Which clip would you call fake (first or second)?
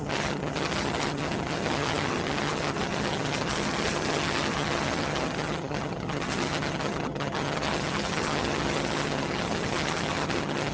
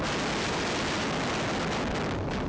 first